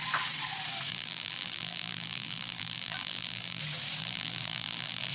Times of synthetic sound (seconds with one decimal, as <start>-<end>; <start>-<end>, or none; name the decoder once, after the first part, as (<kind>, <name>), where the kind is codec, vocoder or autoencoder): 0.9-3.6 (vocoder, BigVGAN v2); 4.0-5.1